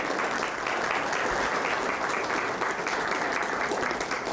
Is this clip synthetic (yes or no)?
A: no